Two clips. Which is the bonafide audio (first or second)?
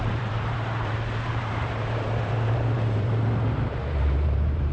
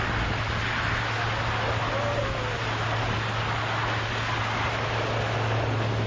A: second